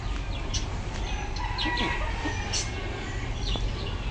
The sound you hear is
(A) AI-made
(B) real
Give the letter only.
B